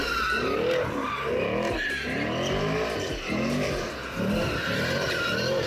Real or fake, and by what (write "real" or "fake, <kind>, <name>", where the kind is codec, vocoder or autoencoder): real